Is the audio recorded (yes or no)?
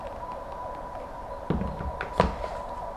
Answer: yes